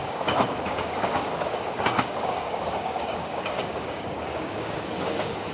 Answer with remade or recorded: remade